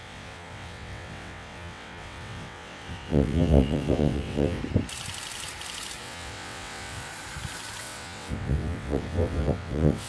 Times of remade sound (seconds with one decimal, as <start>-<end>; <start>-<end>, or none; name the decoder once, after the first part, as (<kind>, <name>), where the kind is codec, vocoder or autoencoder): 0.0-4.6 (vocoder, WaveNeXt); 6.0-7.1; 7.8-10.1